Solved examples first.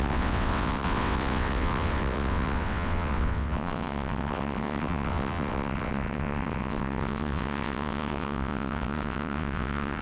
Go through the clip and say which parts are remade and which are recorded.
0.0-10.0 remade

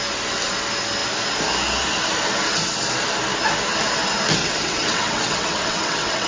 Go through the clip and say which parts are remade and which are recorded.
0.0-4.4 recorded; 4.4-6.3 remade

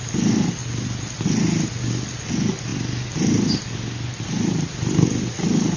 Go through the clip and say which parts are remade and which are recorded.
0.0-5.8 recorded

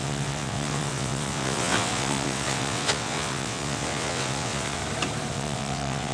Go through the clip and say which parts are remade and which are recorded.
0.0-4.8 remade; 4.8-5.3 recorded; 5.3-6.1 remade

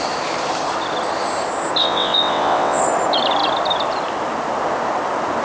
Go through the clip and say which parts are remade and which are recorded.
0.0-1.8 recorded; 1.8-2.8 remade; 2.8-5.4 recorded

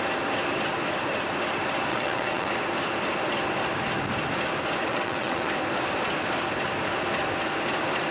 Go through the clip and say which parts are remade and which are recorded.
0.0-1.9 recorded; 1.9-2.5 remade; 2.5-4.9 recorded; 4.9-5.5 remade; 5.5-8.1 recorded

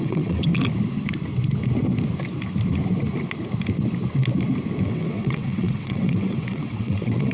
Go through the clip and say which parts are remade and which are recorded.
0.0-0.5 remade; 0.5-4.9 recorded; 4.9-7.3 remade

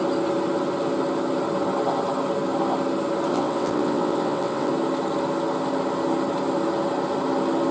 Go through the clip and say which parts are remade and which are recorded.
0.0-3.3 recorded; 3.3-4.7 remade; 4.7-7.7 recorded